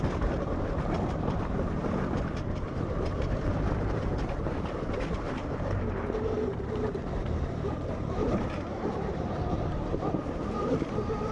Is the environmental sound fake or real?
fake